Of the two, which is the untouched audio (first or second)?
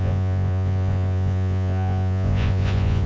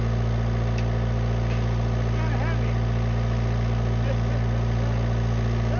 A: second